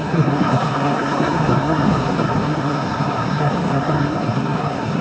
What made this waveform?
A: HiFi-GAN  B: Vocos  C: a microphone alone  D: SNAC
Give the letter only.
D